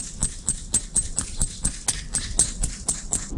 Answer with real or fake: real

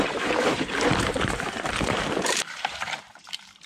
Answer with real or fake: fake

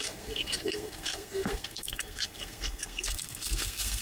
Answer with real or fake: fake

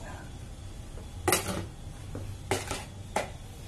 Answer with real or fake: real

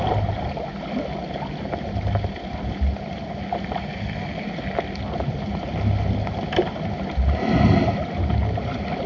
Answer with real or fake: real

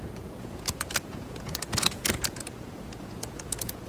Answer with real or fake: fake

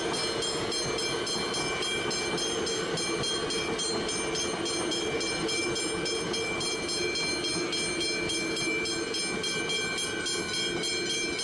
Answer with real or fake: real